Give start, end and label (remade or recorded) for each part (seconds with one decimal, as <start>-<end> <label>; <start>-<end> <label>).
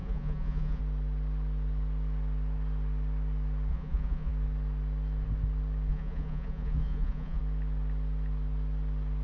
0.0-0.8 remade; 0.8-3.7 recorded; 3.7-4.3 remade; 4.3-5.9 recorded; 5.9-7.4 remade; 7.4-9.2 recorded